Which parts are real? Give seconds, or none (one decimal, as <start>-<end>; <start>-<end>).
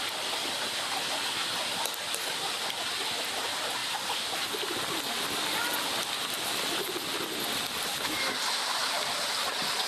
0.0-8.8; 9.5-9.9